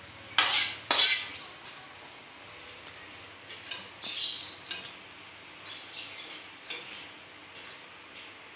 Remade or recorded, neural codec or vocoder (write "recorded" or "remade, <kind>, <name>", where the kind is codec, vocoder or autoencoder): recorded